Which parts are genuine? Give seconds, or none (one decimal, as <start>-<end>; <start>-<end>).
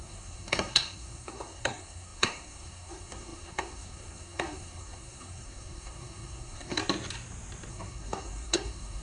6.8-7.7